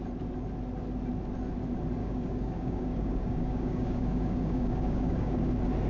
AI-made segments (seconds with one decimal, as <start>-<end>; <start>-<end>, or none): 2.0-5.5